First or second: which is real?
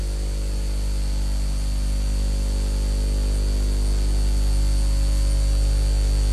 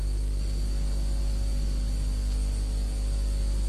first